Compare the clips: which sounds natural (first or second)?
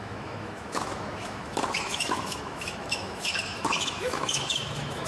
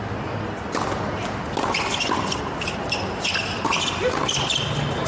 second